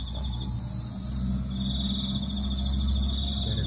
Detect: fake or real real